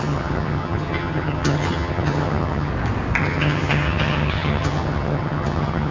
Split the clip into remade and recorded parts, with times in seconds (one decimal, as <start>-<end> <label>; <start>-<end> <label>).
0.0-2.7 remade; 2.7-3.2 recorded; 3.2-5.9 remade

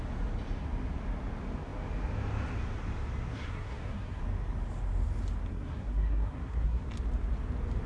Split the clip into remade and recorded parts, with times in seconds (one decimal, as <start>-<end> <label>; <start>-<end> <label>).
0.0-3.3 recorded; 3.3-4.2 remade; 4.2-5.5 recorded; 5.5-6.9 remade; 6.9-7.9 recorded